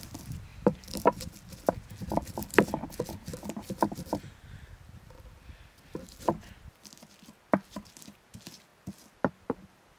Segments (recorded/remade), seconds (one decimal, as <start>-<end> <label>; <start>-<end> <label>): 0.0-3.3 recorded; 3.3-6.2 remade; 6.2-10.0 recorded